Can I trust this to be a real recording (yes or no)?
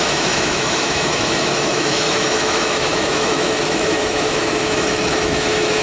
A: no